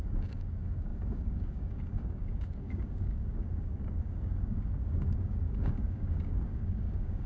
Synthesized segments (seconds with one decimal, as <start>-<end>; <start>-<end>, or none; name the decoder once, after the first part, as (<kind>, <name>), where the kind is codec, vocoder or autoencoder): 0.0-7.3 (codec, DAC)